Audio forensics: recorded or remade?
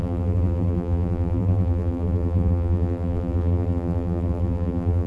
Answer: remade